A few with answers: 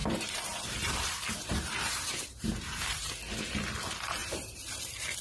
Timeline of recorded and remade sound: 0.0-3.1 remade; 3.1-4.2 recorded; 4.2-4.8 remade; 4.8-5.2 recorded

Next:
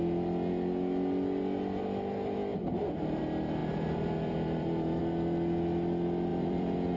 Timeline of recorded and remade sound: 0.0-3.6 recorded; 3.6-5.0 remade; 5.0-6.3 recorded; 6.3-7.0 remade